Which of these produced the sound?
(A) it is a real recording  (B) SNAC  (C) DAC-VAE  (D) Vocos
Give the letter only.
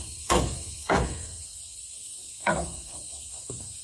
B